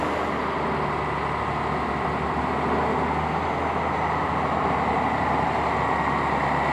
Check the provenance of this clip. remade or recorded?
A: recorded